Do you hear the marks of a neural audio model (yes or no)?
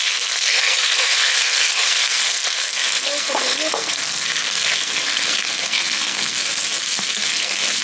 yes